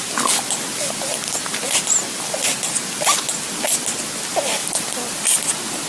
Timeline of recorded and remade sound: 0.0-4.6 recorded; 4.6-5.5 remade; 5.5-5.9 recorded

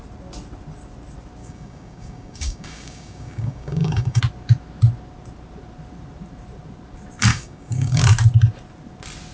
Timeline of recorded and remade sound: 0.0-1.4 recorded; 1.4-4.2 remade; 4.2-7.3 recorded; 7.3-8.0 remade; 8.0-9.3 recorded

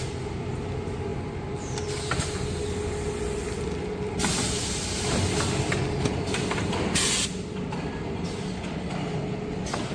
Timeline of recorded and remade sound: 0.0-9.9 recorded

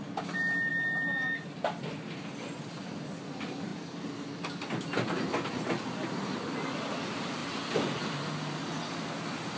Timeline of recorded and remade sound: 0.0-9.6 recorded

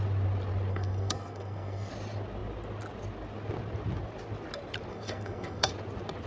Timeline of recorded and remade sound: 0.0-0.7 recorded; 0.7-1.9 remade; 1.9-4.9 recorded; 4.9-5.7 remade; 5.7-6.3 recorded

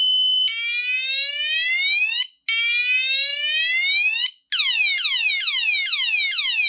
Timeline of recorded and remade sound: 0.0-6.7 recorded